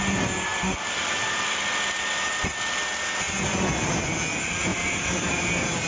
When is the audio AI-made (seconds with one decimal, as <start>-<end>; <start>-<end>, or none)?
4.7-5.5